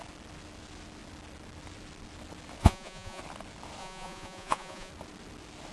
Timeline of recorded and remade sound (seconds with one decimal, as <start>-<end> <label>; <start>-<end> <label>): 0.0-2.6 recorded; 2.6-3.2 remade; 3.2-3.8 recorded; 3.8-4.9 remade; 4.9-5.7 recorded